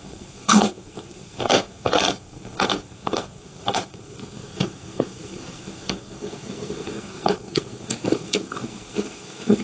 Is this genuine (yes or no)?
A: no